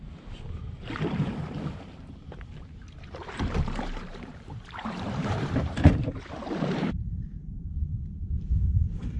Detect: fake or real fake